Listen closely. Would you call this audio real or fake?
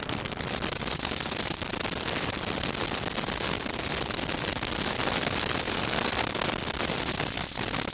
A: fake